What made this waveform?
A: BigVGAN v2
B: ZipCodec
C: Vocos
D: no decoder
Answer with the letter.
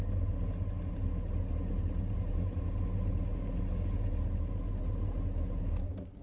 D